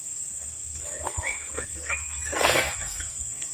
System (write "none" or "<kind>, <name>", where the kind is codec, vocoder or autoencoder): codec, SNAC